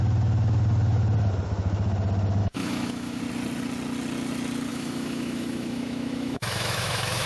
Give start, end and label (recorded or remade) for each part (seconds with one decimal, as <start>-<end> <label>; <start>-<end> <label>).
0.0-2.4 recorded; 2.4-3.2 remade; 3.2-4.7 recorded; 4.7-7.3 remade